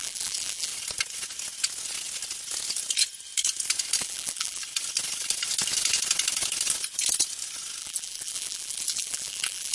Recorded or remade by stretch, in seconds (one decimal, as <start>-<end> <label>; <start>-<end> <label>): 0.0-0.7 remade; 0.7-4.0 recorded; 4.0-4.6 remade; 4.6-7.8 recorded; 7.8-9.7 remade